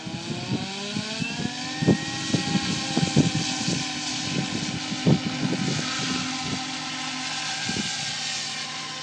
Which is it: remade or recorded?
recorded